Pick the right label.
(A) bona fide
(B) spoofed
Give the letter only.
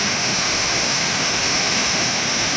B